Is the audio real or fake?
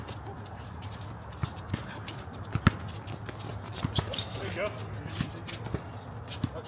real